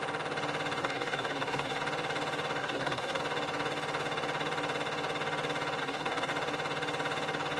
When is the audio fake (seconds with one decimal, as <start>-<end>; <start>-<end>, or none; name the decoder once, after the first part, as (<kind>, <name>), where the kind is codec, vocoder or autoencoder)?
0.8-1.8 (codec, SNAC); 2.6-3.2; 5.8-6.3